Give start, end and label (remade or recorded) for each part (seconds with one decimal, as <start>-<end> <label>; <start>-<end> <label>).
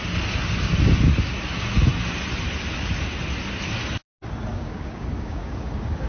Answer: 0.0-4.5 recorded; 4.5-6.1 remade